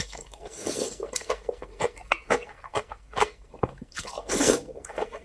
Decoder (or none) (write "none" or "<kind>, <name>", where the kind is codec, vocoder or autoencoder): codec, SNAC